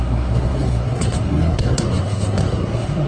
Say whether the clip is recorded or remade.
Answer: remade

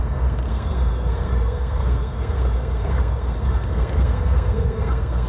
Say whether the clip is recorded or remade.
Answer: remade